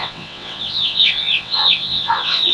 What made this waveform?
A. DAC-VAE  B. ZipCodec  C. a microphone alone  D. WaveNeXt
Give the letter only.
D